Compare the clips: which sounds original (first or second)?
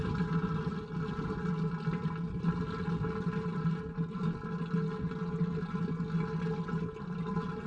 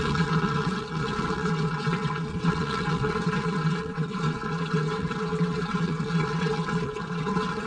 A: first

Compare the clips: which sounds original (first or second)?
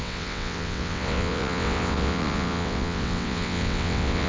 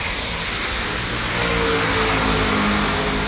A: second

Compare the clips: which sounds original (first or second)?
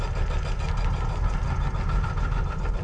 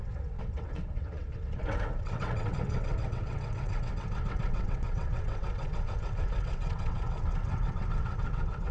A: first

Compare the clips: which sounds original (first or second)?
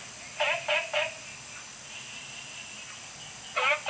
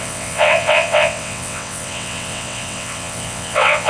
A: first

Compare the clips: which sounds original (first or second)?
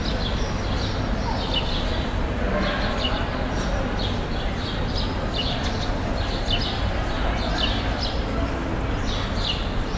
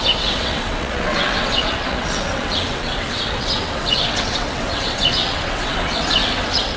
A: first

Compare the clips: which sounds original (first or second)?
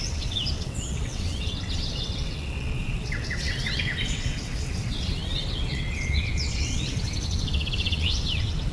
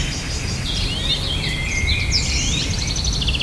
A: second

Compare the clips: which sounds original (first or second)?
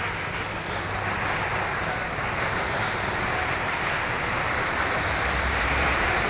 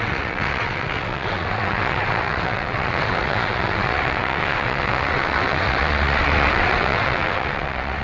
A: first